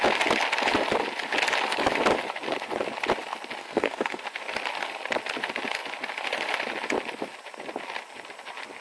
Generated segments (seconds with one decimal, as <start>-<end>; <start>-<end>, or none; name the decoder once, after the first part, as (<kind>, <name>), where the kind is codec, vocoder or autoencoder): 3.6-4.2 (codec, SNAC)